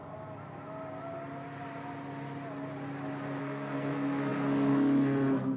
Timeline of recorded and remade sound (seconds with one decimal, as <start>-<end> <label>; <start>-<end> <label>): 0.0-3.4 recorded; 3.4-5.6 remade